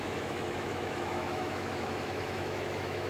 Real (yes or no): no